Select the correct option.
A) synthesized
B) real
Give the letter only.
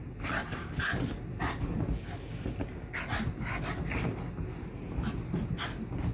B